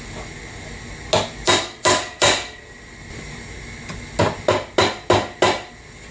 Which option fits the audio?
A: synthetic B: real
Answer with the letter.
B